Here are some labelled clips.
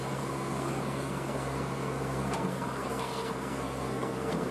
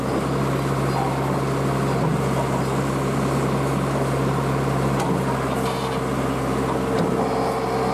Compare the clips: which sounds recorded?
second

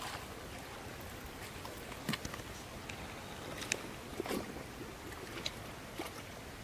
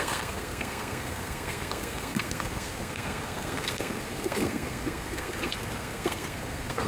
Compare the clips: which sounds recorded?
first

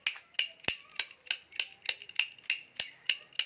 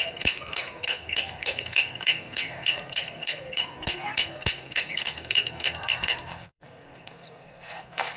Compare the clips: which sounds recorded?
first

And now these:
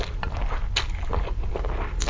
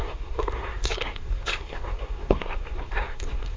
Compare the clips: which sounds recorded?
first